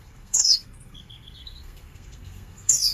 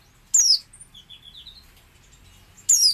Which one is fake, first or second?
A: first